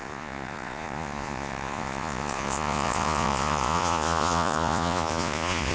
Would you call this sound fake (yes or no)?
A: yes